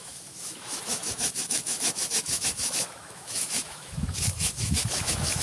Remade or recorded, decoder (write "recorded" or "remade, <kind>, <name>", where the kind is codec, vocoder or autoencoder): remade, autoencoder, DAC-VAE